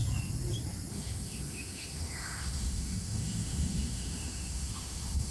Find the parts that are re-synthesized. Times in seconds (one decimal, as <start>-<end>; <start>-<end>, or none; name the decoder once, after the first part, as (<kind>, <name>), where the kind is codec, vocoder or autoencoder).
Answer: 0.9-5.3 (autoencoder, DAC-VAE)